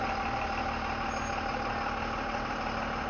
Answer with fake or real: real